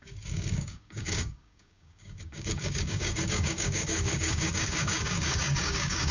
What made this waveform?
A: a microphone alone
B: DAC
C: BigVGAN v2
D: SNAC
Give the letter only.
B